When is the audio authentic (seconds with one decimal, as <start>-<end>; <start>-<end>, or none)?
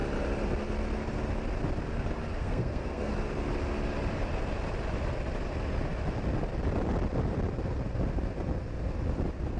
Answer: 0.0-2.4; 3.1-9.6